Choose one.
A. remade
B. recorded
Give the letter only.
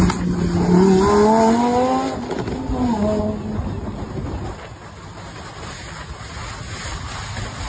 B